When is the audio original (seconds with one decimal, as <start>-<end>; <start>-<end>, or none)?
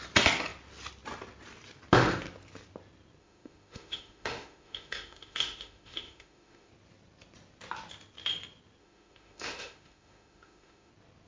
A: 0.0-3.2; 6.7-8.8; 10.9-11.3